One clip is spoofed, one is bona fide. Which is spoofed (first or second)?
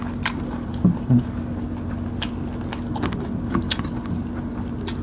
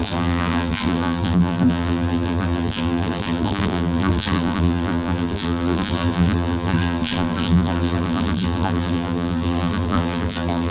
second